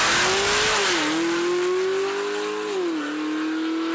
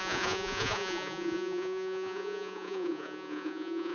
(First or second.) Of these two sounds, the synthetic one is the second